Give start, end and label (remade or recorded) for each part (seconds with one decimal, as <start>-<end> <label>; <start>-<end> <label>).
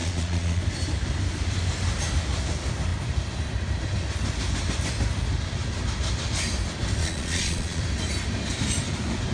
0.0-0.6 remade; 0.6-7.0 recorded; 7.0-7.8 remade; 7.8-9.3 recorded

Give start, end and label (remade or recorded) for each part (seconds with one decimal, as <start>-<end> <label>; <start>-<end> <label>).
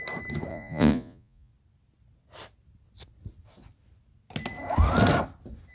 0.0-0.5 recorded; 0.5-1.5 remade; 1.5-5.7 recorded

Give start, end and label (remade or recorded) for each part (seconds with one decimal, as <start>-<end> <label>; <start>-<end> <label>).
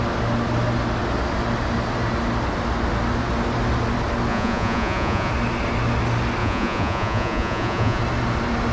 0.0-4.3 recorded; 4.3-5.3 remade; 5.3-6.4 recorded; 6.4-8.0 remade; 8.0-8.7 recorded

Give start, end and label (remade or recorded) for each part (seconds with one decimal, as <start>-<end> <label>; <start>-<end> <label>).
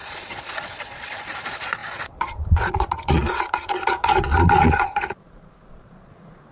0.0-6.5 remade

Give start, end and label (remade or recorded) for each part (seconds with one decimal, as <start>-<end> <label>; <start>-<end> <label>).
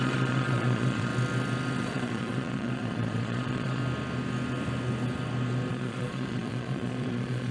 0.0-1.1 remade; 1.1-1.8 recorded; 1.8-3.8 remade; 3.8-5.7 recorded; 5.7-7.5 remade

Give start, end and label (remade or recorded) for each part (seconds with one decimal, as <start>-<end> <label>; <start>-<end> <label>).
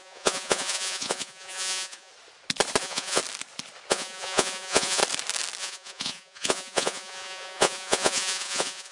0.0-2.1 remade; 2.1-2.8 recorded; 2.8-3.2 remade; 3.2-3.9 recorded; 3.9-5.0 remade; 5.0-5.6 recorded; 5.6-8.9 remade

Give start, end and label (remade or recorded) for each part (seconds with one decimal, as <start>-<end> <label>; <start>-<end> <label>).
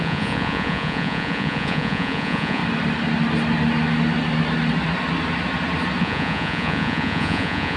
0.0-2.6 remade; 2.6-6.0 recorded; 6.0-7.8 remade